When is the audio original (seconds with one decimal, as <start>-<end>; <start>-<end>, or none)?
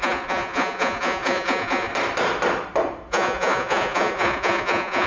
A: 1.9-3.1